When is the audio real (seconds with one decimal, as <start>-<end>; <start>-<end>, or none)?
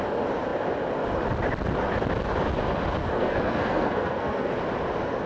0.0-3.0; 4.5-5.3